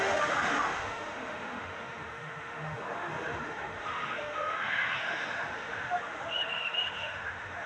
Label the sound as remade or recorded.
remade